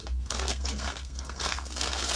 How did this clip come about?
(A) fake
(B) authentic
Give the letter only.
A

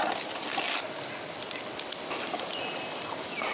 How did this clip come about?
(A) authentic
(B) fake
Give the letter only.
A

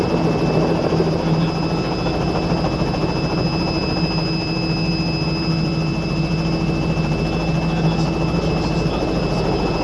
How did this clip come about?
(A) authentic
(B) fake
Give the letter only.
A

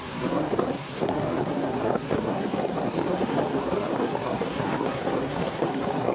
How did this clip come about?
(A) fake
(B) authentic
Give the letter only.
A